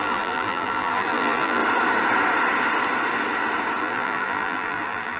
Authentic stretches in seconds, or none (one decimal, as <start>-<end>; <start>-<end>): 1.6-3.8